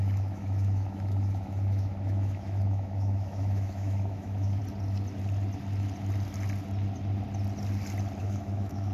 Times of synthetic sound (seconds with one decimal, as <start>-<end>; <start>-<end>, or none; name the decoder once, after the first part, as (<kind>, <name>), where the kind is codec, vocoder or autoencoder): 0.0-4.6 (autoencoder, DAC-VAE); 8.2-8.9